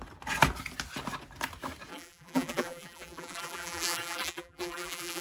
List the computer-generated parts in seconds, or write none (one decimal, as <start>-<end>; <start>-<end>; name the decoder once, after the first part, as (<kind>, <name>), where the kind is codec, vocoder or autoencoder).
1.9-5.2 (vocoder, BigVGAN v2)